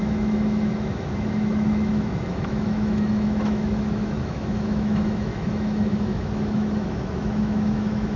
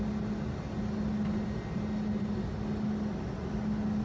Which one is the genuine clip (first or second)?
second